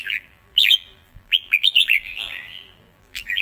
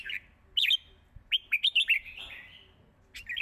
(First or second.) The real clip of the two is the second